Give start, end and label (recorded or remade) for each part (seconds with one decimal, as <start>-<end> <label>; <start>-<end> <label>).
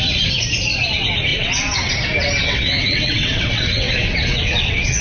0.0-1.3 recorded; 1.3-1.9 remade; 1.9-2.4 recorded; 2.4-5.0 remade